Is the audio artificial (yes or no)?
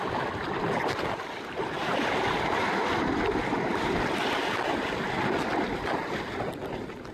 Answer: no